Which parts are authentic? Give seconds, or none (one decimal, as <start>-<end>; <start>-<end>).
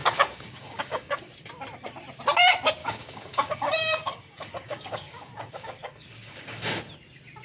1.2-2.8; 6.8-7.4